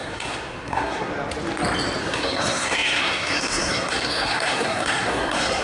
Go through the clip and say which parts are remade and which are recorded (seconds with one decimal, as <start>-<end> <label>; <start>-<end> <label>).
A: 0.0-1.1 remade; 1.1-2.0 recorded; 2.0-5.6 remade

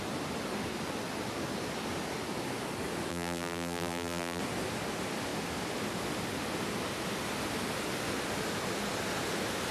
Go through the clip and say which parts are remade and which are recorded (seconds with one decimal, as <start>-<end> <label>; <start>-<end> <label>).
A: 0.0-3.1 recorded; 3.1-4.4 remade; 4.4-9.7 recorded

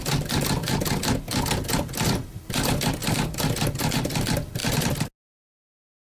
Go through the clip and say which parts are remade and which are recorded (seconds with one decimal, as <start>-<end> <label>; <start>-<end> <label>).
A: 0.0-0.6 remade; 0.6-2.4 recorded; 2.4-3.0 remade; 3.0-3.9 recorded; 3.9-4.6 remade; 4.6-5.5 recorded; 5.5-6.1 remade

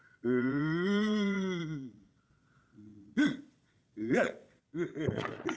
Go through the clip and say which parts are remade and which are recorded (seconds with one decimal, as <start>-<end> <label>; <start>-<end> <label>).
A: 0.0-5.6 remade

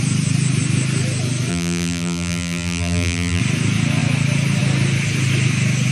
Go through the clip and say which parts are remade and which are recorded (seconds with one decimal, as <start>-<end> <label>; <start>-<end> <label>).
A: 0.0-1.5 recorded; 1.5-3.4 remade; 3.4-5.9 recorded

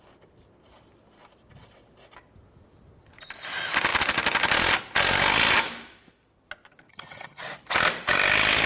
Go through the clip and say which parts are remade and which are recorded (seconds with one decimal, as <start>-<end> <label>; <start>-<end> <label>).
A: 0.0-6.9 recorded; 6.9-7.4 remade; 7.4-8.7 recorded

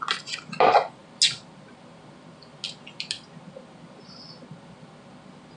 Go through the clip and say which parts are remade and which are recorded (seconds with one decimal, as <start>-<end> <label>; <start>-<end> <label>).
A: 0.0-5.6 recorded